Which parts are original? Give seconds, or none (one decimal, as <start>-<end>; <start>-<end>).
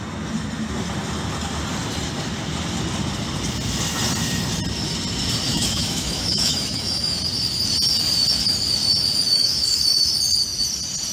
0.0-5.5; 7.2-9.3; 10.1-11.1